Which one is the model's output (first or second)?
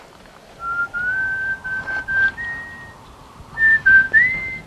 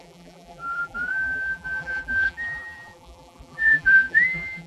second